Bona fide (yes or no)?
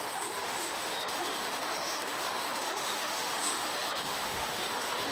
no